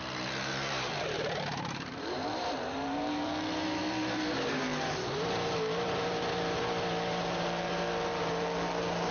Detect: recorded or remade remade